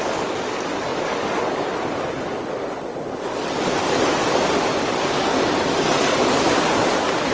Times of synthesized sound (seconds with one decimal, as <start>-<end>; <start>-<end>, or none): none

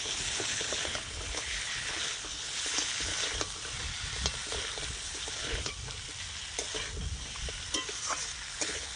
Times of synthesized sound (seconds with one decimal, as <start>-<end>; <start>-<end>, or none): 0.0-3.1; 4.9-5.7; 8.5-9.0

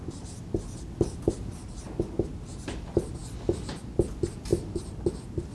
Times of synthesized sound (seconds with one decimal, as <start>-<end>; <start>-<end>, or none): none

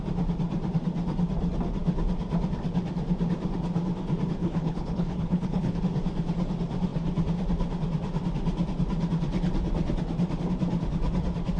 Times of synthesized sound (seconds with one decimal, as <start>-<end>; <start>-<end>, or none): 4.4-5.8

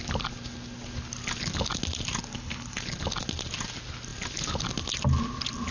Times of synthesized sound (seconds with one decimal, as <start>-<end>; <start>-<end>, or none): 2.3-2.8

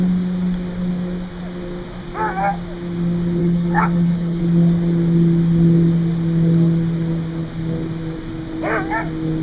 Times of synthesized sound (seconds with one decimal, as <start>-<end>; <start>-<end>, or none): 3.4-4.4

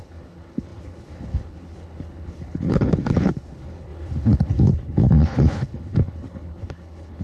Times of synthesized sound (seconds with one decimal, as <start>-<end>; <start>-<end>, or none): 0.0-7.2